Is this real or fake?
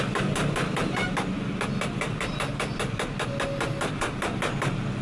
real